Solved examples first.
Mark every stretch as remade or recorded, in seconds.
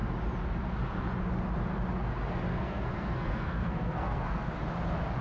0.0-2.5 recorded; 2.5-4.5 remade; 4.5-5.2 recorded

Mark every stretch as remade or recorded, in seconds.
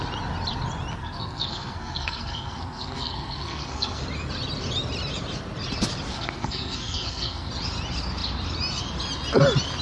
0.0-1.0 recorded; 1.0-4.0 remade; 4.0-6.1 recorded; 6.1-7.5 remade; 7.5-9.8 recorded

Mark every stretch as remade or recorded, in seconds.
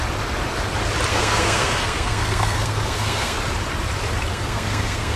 0.0-1.1 recorded; 1.1-3.4 remade; 3.4-4.3 recorded; 4.3-5.2 remade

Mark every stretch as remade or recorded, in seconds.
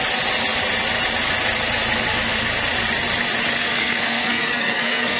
0.0-3.6 recorded; 3.6-5.2 remade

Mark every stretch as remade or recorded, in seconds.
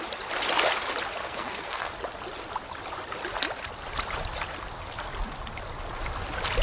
0.0-1.2 recorded; 1.2-1.9 remade; 1.9-6.6 recorded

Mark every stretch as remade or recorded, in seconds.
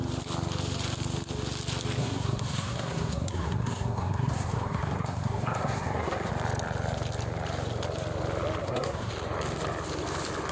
0.0-2.0 recorded; 2.0-6.3 remade; 6.3-8.6 recorded; 8.6-9.1 remade; 9.1-10.5 recorded